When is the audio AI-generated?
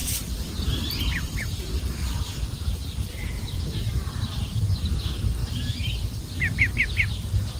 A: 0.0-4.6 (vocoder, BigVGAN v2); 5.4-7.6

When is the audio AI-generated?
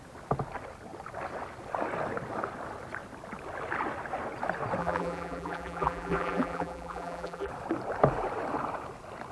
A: 4.8-7.5 (vocoder, BigVGAN v2)